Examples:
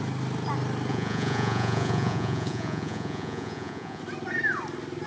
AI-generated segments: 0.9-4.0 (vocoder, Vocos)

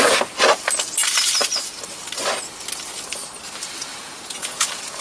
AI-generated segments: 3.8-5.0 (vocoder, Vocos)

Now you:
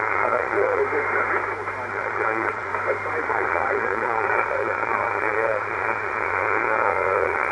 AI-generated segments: 0.0-0.8 (vocoder, Vocos); 1.9-2.7; 3.2-7.5

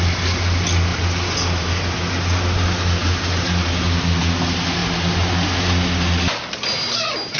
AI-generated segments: none

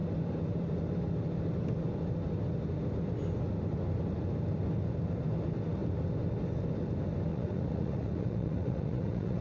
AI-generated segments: 7.3-9.4 (vocoder, Vocos)

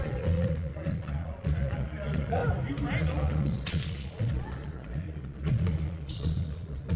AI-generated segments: 0.0-2.4 (vocoder, Vocos); 3.0-7.0